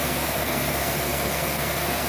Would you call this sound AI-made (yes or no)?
yes